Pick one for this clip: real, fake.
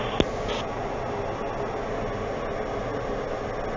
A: real